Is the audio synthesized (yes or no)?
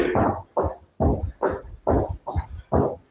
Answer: no